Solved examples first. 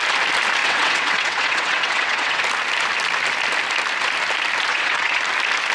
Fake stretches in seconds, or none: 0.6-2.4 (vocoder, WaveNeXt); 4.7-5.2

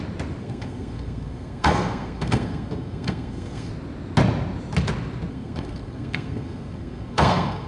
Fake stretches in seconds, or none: 0.4-3.7 (codec, SNAC); 5.3-7.7

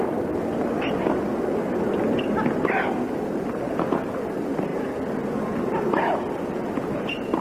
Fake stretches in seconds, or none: none

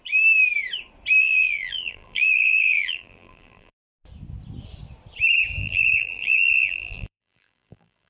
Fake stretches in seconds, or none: 1.2-3.8 (vocoder, BigVGAN v2); 5.6-8.1

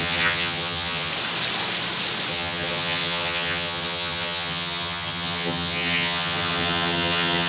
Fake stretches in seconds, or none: 0.0-1.1 (vocoder, HiFi-GAN); 2.3-7.5

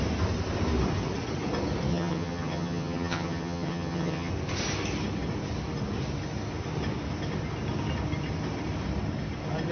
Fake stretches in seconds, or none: 1.9-4.3 (vocoder, HiFi-GAN)